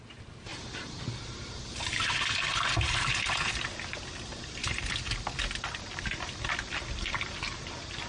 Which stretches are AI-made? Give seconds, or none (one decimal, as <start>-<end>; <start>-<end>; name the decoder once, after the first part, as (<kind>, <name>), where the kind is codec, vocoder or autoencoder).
0.5-3.5 (vocoder, BigVGAN v2); 4.3-4.9